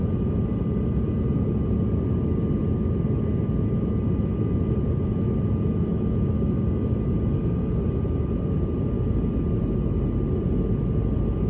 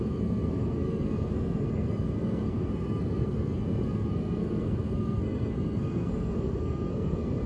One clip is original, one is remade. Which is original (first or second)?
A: first